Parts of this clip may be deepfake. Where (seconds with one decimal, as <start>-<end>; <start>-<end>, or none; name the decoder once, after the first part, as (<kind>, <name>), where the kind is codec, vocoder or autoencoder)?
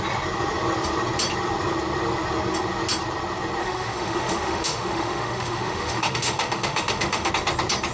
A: 3.6-7.3 (autoencoder, DAC-VAE)